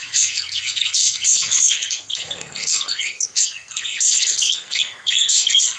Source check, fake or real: fake